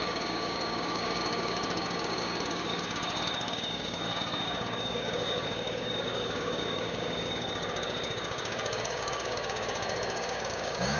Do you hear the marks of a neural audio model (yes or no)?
yes